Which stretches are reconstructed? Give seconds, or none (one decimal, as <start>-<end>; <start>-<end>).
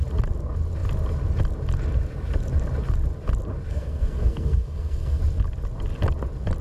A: 3.7-5.2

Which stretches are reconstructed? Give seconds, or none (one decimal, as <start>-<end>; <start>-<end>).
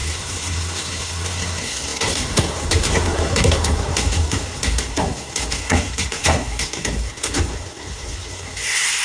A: 0.0-9.0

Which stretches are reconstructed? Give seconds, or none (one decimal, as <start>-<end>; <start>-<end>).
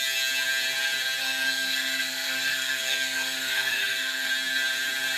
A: 1.2-4.3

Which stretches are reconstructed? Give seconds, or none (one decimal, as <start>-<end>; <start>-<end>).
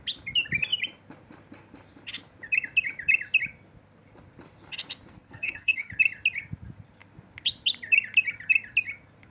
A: 5.1-5.9